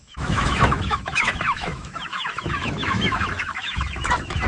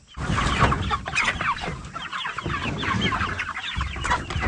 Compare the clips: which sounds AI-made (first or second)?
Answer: first